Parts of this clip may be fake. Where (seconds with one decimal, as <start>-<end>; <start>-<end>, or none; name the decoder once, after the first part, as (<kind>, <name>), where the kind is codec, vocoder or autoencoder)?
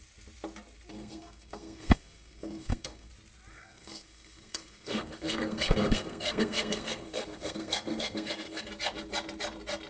0.9-3.1 (codec, SNAC); 3.5-8.6